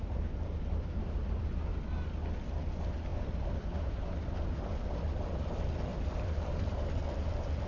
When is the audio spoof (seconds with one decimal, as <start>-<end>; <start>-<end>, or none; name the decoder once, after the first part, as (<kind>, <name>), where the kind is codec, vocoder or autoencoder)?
0.0-1.7 (vocoder, BigVGAN v2); 2.7-7.7

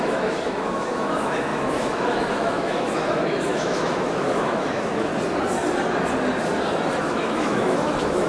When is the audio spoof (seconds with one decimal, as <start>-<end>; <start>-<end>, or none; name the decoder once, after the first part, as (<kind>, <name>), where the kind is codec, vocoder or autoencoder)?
0.0-5.1 (autoencoder, DAC-VAE); 7.0-8.3

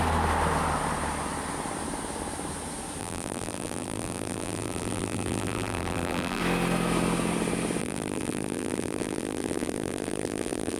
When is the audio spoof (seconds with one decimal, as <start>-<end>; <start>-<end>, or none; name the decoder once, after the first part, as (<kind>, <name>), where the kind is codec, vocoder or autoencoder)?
3.0-6.4 (vocoder, BigVGAN v2); 7.8-10.8

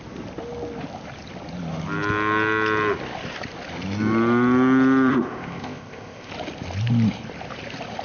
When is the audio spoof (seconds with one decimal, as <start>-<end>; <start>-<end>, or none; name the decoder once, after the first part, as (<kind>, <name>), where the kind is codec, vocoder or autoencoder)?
5.1-6.3 (codec, ZipCodec)

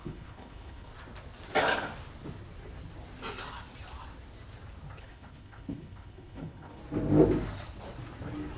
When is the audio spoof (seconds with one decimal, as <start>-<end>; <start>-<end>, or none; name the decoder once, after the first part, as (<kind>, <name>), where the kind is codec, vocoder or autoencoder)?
0.0-0.9 (codec, HILCodec); 5.0-6.8

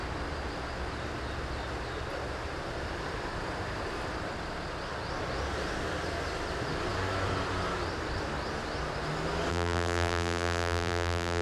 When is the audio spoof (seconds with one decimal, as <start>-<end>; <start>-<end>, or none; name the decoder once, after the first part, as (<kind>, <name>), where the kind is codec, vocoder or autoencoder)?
9.5-11.4 (vocoder, BigVGAN v2)

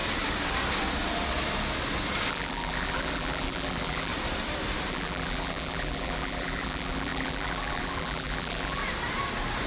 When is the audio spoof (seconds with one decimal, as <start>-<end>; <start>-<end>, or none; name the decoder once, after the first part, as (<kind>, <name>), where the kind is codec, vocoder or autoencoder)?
2.3-4.1 (vocoder, BigVGAN v2); 4.9-8.8

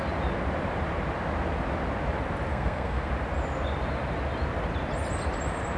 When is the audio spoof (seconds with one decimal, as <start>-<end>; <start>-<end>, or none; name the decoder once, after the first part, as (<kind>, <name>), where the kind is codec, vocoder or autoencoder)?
2.5-3.1 (codec, SNAC)